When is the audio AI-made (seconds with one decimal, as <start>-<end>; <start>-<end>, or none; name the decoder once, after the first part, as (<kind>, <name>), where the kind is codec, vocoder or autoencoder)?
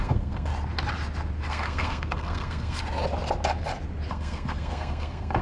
0.0-0.5 (codec, SNAC); 1.5-2.8; 4.1-5.4